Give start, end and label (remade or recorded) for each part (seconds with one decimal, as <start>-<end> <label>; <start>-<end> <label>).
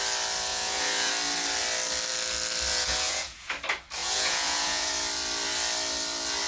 0.0-0.5 recorded; 0.5-1.1 remade; 1.1-2.7 recorded; 2.7-3.5 remade; 3.5-4.0 recorded; 4.0-4.9 remade; 4.9-6.5 recorded